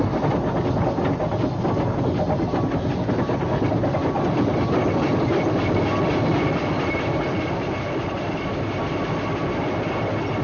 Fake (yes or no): no